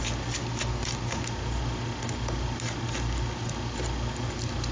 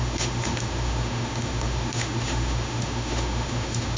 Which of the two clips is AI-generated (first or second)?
second